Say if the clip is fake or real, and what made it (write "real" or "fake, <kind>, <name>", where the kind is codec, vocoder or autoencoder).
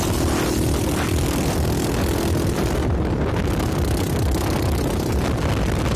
real